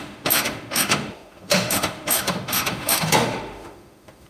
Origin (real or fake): fake